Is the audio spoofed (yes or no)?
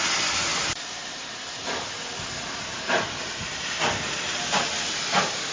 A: no